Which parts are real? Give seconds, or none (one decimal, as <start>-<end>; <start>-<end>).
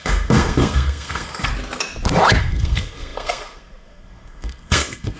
1.5-2.4